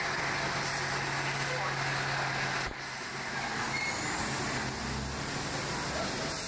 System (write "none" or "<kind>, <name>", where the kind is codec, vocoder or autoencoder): none